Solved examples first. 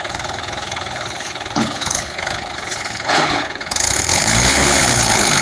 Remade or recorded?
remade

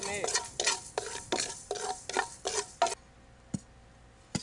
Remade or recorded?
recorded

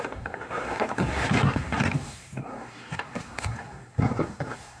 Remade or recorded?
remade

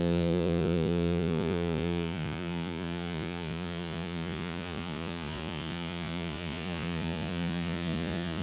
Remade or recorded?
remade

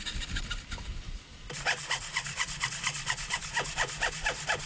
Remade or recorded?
recorded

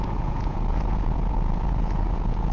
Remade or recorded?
remade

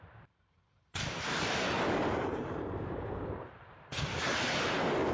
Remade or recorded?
remade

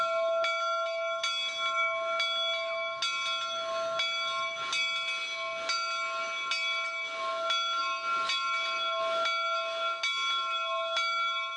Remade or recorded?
recorded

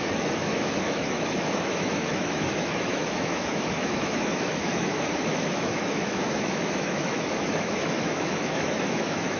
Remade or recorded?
remade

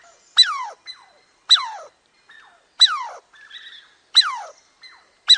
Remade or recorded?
recorded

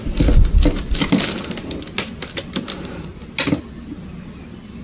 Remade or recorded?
recorded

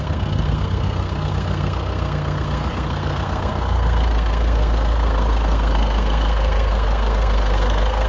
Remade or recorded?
remade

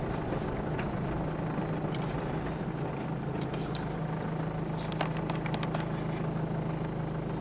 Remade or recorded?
recorded